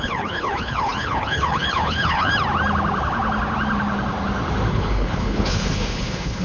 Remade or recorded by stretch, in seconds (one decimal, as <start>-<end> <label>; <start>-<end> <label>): 0.0-2.3 remade; 2.3-4.7 recorded; 4.7-6.4 remade